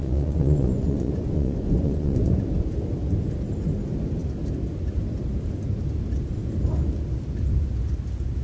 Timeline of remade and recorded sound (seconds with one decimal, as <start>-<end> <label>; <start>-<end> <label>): 0.0-2.4 remade; 2.4-8.4 recorded